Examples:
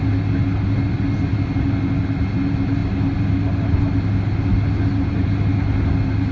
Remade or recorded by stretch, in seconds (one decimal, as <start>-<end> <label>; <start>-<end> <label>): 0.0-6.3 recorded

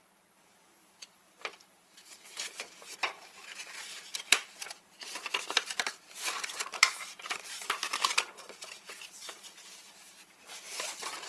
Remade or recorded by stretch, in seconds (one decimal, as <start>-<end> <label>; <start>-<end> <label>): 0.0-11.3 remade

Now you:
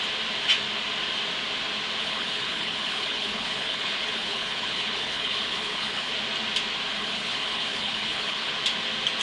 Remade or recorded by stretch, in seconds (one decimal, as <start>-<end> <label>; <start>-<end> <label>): 0.0-2.0 recorded; 2.0-6.1 remade; 6.1-6.9 recorded; 6.9-8.5 remade; 8.5-9.2 recorded